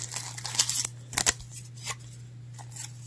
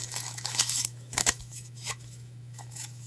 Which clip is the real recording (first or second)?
first